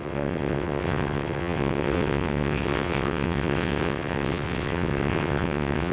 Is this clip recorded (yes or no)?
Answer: no